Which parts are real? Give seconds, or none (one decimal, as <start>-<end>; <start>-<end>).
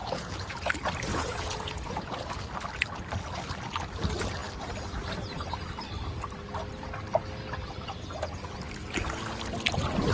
0.7-1.1; 2.4-10.1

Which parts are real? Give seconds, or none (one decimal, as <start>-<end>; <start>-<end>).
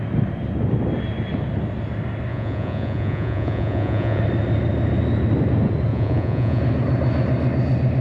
0.0-2.3; 4.2-5.9; 6.6-8.0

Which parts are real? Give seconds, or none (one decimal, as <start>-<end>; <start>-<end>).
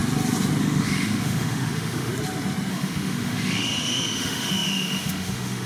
0.0-0.6; 2.1-2.7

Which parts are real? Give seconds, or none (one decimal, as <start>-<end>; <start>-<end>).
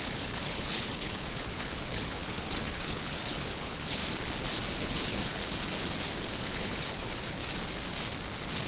4.0-4.8; 5.4-6.4; 7.4-8.7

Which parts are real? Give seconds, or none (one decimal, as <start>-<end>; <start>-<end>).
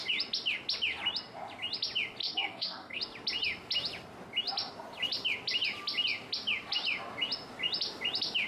0.0-2.2; 3.0-8.5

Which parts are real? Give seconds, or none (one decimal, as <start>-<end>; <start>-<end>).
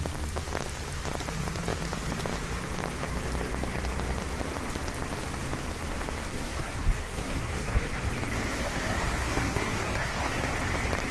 0.0-6.3; 8.1-8.5; 10.4-11.1